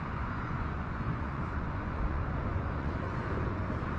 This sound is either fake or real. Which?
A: fake